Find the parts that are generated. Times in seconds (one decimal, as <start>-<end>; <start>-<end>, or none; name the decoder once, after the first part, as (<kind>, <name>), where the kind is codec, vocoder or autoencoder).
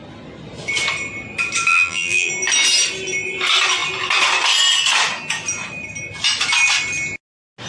1.7-2.3 (vocoder, BigVGAN v2)